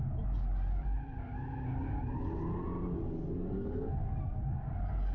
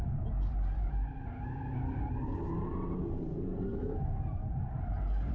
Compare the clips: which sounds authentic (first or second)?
first